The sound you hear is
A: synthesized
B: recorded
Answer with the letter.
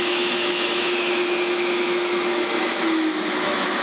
A